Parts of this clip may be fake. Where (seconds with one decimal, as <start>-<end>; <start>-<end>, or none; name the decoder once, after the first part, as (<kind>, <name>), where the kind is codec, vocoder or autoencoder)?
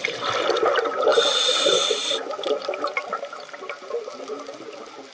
none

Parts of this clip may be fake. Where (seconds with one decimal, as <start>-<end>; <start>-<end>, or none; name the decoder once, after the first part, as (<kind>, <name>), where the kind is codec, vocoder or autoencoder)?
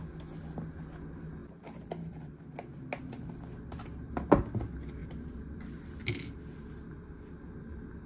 none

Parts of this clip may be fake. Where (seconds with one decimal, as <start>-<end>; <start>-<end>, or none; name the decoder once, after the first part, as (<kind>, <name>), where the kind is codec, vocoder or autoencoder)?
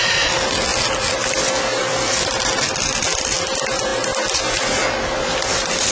none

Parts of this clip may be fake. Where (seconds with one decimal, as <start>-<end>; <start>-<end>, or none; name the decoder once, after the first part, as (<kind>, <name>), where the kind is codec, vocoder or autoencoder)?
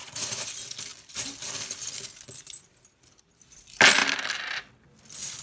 0.0-0.5 (vocoder, Vocos)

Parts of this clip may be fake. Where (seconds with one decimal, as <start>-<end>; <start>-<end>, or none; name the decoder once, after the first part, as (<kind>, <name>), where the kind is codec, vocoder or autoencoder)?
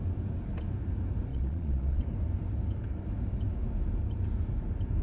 1.3-2.0 (vocoder, Vocos)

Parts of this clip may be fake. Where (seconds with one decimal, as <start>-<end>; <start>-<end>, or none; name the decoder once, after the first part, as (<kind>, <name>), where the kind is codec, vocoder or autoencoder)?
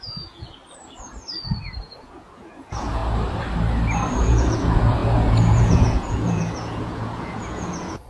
0.0-0.6 (vocoder, Vocos); 1.8-3.0; 4.2-8.1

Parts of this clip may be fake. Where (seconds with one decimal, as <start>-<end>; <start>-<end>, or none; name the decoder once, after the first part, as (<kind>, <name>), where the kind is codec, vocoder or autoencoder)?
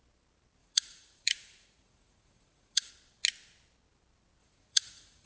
0.6-2.9 (vocoder, Vocos); 4.4-5.3